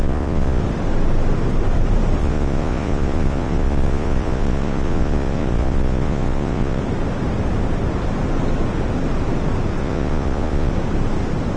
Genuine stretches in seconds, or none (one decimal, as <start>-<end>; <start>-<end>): 0.6-2.2; 6.8-9.8; 10.7-11.6